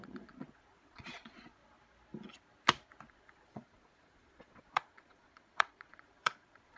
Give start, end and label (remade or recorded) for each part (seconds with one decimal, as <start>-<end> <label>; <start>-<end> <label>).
0.0-1.6 remade; 1.6-3.1 recorded; 3.1-6.8 remade